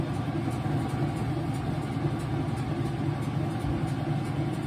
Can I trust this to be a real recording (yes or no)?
yes